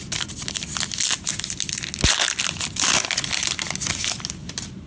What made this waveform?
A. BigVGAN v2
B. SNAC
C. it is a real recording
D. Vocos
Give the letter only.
C